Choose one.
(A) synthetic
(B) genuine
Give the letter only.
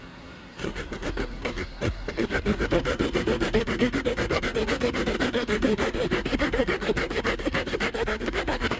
A